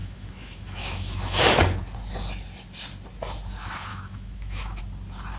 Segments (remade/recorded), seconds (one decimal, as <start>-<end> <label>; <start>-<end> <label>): 0.0-1.4 remade; 1.4-3.9 recorded; 3.9-4.8 remade; 4.8-5.4 recorded

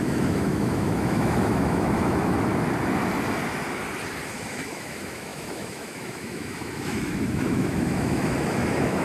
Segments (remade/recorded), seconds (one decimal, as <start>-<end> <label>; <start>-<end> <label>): 0.0-2.5 remade; 2.5-4.4 recorded; 4.4-9.0 remade

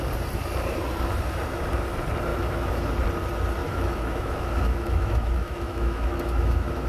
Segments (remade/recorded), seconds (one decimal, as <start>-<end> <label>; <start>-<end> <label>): 0.0-2.3 recorded; 2.3-2.8 remade; 2.8-3.6 recorded; 3.6-6.9 remade